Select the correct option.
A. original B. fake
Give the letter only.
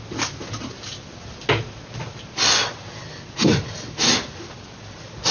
A